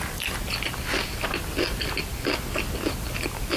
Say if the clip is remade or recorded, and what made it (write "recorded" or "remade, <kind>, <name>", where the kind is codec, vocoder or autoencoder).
recorded